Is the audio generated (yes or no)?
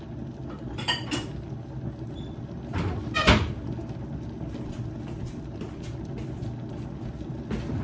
no